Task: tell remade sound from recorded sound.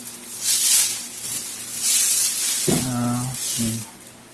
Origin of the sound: recorded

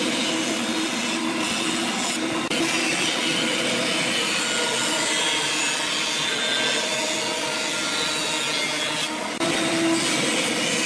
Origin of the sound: recorded